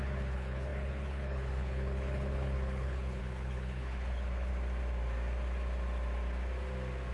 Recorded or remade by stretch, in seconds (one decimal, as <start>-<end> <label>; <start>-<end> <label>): 0.0-4.5 remade; 4.5-7.1 recorded